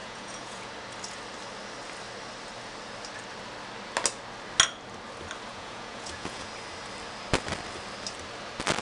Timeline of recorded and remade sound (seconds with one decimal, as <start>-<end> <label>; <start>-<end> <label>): 0.0-0.7 remade; 0.7-5.5 recorded; 5.5-6.5 remade; 6.5-8.8 recorded